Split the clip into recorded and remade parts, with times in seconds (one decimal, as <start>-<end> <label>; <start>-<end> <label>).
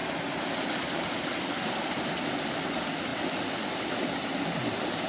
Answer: 0.0-5.1 recorded